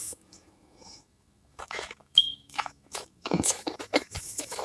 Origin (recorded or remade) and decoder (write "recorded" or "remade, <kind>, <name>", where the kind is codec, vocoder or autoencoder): remade, autoencoder, DAC-VAE